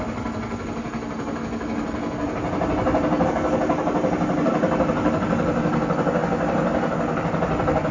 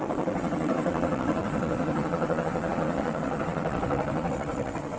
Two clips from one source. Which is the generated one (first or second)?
second